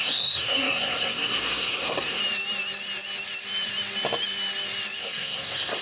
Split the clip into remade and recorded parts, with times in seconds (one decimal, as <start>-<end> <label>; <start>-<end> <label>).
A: 0.0-2.2 remade; 2.2-5.0 recorded; 5.0-5.8 remade